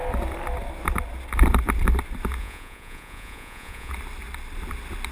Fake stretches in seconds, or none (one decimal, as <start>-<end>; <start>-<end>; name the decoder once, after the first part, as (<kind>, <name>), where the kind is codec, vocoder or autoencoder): 2.4-3.9 (vocoder, Vocos)